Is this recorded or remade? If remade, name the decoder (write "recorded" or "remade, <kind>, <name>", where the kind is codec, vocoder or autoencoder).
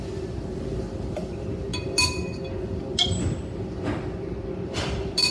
recorded